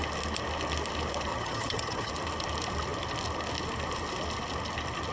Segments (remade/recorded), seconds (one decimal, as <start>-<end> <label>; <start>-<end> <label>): 0.0-1.3 recorded; 1.3-2.1 remade; 2.1-5.1 recorded